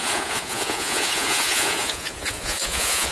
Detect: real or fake fake